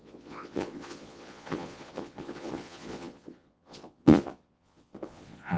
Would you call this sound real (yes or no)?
no